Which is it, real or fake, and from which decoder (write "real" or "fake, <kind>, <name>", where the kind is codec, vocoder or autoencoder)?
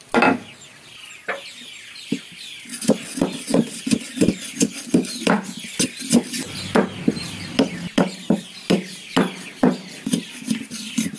real